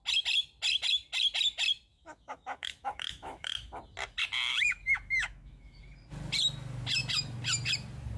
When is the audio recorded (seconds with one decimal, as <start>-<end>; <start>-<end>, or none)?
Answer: 0.0-1.9; 3.8-4.5; 5.8-8.2